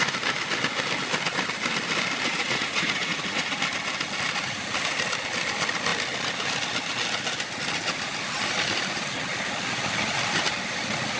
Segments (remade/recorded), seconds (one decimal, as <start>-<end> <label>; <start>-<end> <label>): 0.0-2.3 recorded; 2.3-3.6 remade; 3.6-11.2 recorded